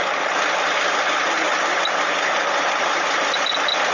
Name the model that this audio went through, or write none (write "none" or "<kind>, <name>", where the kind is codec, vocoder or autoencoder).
none